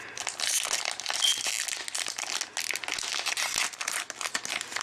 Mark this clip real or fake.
real